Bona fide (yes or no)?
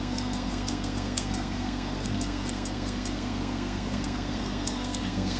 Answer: no